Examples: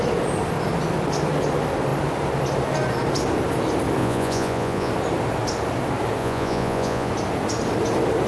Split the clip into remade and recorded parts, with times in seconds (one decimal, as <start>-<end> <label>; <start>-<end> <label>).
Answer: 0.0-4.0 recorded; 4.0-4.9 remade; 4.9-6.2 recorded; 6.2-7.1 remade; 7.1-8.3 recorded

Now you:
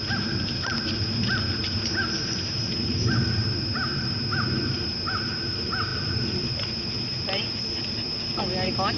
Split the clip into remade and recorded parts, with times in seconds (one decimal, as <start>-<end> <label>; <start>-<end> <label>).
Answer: 0.0-9.0 recorded

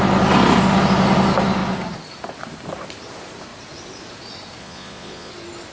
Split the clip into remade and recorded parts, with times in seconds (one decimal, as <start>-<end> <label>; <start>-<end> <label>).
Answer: 0.0-4.6 recorded; 4.6-5.3 remade; 5.3-5.7 recorded

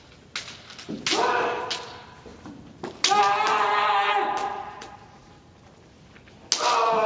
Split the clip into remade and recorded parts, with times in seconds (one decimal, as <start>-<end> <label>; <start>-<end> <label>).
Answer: 0.0-4.4 recorded; 4.4-5.3 remade; 5.3-7.1 recorded

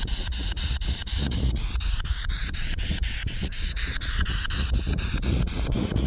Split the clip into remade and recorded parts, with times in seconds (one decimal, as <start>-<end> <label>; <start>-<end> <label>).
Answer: 0.0-6.1 remade

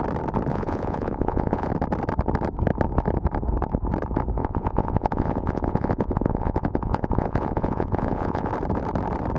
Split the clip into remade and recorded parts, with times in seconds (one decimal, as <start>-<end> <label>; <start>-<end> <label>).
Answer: 0.0-0.5 recorded; 0.5-1.7 remade; 1.7-4.4 recorded; 4.4-8.5 remade; 8.5-9.4 recorded

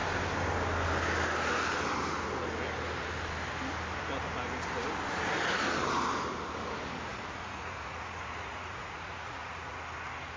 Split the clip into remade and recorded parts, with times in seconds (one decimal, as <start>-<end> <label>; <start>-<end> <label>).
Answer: 0.0-7.1 recorded; 7.1-9.8 remade; 9.8-10.4 recorded